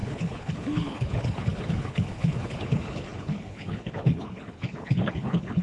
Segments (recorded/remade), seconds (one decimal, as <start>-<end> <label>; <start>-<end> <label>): 0.0-5.6 remade